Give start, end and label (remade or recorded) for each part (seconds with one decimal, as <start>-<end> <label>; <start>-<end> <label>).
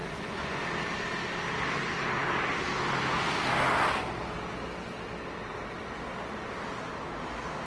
0.0-0.6 remade; 0.6-7.7 recorded